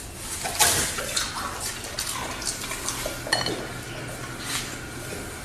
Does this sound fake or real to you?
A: real